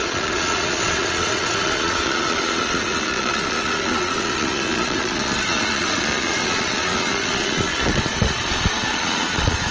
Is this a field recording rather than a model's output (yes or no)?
no